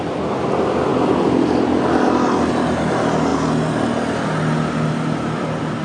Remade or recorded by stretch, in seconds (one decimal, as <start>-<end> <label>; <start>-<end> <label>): 0.0-5.8 recorded

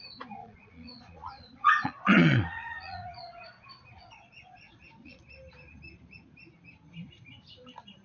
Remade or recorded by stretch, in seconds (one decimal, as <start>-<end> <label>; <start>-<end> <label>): 0.0-0.4 recorded; 0.4-5.2 remade; 5.2-8.0 recorded

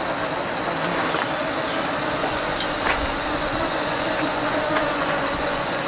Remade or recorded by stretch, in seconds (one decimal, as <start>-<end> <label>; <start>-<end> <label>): 0.0-2.2 recorded; 2.2-5.9 remade